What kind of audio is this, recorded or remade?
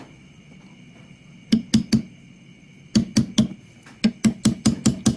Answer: recorded